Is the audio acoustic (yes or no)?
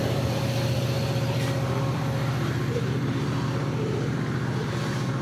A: no